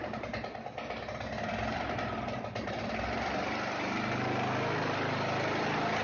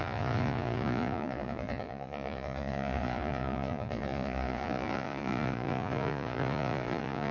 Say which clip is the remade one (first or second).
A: second